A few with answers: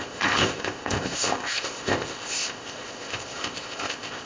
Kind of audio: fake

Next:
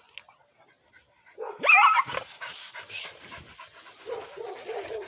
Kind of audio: real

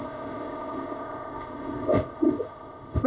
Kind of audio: fake